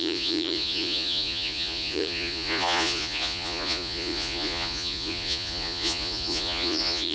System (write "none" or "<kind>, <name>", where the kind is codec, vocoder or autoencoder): vocoder, Vocos